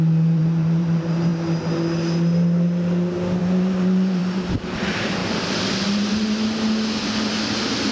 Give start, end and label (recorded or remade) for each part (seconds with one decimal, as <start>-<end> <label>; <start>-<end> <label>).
0.0-1.3 remade; 1.3-3.4 recorded; 3.4-4.2 remade; 4.2-4.8 recorded; 4.8-5.2 remade; 5.2-7.9 recorded